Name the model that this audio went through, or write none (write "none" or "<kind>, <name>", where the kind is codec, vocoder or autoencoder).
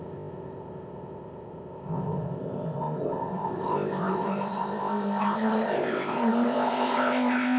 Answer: codec, ZipCodec